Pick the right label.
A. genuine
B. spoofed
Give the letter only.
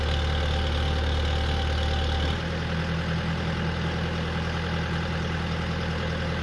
A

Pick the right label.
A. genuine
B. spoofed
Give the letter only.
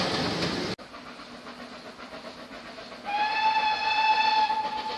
A